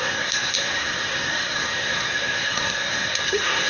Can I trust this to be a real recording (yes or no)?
no